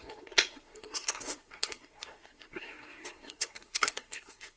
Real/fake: fake